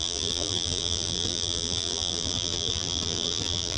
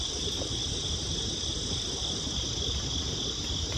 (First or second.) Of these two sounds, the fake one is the first